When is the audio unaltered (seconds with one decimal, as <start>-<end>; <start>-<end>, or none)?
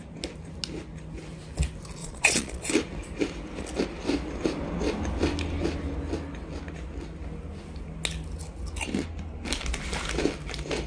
0.0-2.0; 2.7-10.9